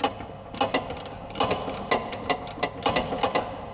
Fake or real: real